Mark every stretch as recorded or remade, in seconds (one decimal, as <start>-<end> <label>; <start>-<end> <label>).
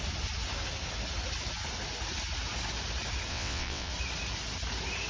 0.0-3.3 recorded; 3.3-3.9 remade; 3.9-5.1 recorded